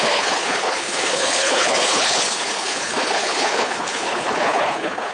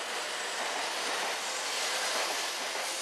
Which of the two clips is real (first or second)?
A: second